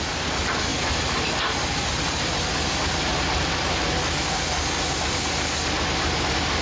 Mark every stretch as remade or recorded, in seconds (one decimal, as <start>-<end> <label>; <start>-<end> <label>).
0.0-6.6 recorded